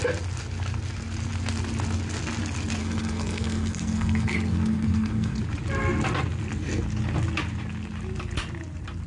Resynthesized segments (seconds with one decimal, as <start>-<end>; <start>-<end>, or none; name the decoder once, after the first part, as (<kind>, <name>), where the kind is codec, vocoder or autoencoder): 2.8-5.4 (codec, SNAC)